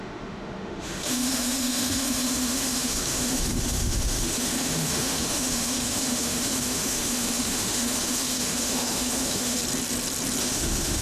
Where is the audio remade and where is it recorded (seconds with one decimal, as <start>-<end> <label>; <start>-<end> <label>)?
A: 0.0-9.6 remade; 9.6-10.4 recorded; 10.4-11.0 remade